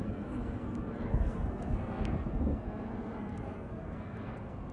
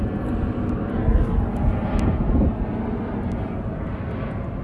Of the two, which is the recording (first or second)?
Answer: second